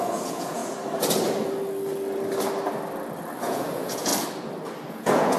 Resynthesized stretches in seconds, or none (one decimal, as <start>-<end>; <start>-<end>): 0.0-0.6; 3.4-4.1; 4.9-5.4